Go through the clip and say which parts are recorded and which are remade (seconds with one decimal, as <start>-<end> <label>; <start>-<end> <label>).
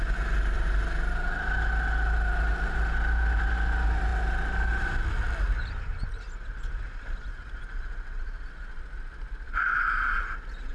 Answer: 0.0-10.7 recorded